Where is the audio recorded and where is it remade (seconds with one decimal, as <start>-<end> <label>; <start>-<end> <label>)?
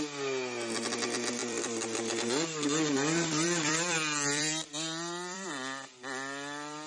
0.0-1.4 recorded; 1.4-5.5 remade; 5.5-6.9 recorded